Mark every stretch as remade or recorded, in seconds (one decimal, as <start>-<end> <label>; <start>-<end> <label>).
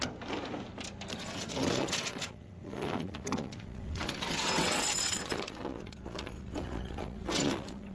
0.0-1.1 recorded; 1.1-7.9 remade